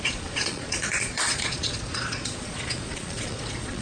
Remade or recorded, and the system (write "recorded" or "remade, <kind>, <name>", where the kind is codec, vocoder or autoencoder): remade, vocoder, Vocos